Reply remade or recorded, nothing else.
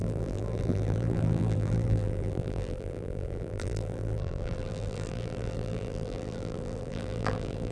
remade